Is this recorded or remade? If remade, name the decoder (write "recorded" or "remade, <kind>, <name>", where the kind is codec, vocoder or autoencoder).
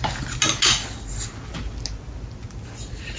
recorded